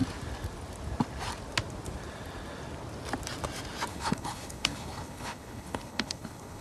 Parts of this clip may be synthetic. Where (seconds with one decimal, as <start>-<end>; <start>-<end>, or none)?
3.9-6.6